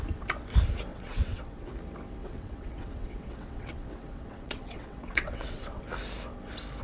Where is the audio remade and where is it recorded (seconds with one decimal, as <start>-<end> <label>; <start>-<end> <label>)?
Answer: 0.0-0.9 recorded; 0.9-1.7 remade; 1.7-2.2 recorded; 2.2-5.8 remade; 5.8-6.8 recorded